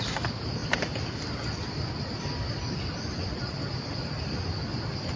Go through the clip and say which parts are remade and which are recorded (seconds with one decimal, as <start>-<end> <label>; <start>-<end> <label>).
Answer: 0.0-5.2 recorded